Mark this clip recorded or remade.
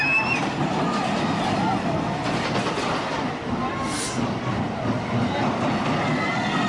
recorded